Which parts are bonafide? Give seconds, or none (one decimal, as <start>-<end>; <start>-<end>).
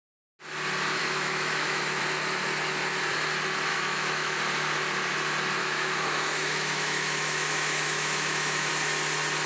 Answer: 0.0-1.0; 2.0-3.7; 4.4-5.6; 8.7-9.5